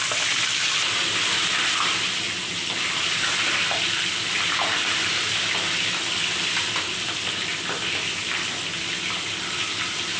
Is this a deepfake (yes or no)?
no